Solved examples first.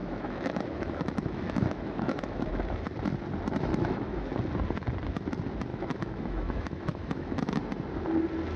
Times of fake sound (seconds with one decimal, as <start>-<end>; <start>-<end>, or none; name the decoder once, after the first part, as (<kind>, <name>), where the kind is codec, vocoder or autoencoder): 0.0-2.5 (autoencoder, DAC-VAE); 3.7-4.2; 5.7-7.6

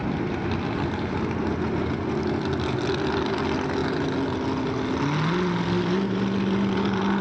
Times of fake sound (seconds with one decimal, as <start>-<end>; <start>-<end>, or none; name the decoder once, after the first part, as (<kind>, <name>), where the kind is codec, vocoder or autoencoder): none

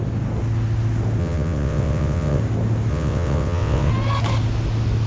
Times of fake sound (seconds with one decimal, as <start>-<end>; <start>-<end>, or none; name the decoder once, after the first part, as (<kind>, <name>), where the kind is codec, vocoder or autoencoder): 1.2-2.4 (vocoder, WaveNeXt); 2.9-3.9

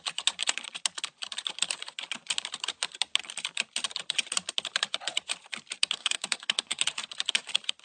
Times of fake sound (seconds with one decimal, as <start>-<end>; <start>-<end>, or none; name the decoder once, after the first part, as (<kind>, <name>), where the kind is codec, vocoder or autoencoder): 6.0-6.8 (codec, SNAC)

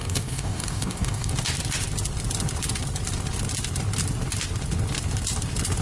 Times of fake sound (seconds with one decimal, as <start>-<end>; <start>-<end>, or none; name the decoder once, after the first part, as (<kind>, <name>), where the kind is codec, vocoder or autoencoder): 0.0-1.3 (codec, DAC)

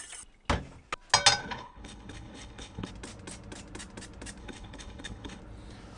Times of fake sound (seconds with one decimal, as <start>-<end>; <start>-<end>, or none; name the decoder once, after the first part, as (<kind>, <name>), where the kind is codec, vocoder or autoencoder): 1.4-2.9 (codec, HILCodec); 4.4-5.4